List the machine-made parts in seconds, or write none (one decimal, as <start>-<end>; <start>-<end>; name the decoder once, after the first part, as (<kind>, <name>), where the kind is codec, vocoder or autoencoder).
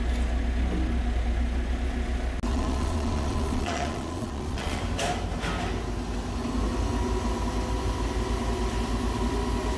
2.5-4.8 (vocoder, Vocos)